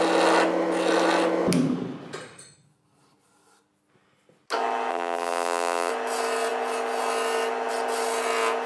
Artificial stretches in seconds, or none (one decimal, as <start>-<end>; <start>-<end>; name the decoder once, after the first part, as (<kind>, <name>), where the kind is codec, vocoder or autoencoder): 4.9-5.9 (vocoder, BigVGAN v2)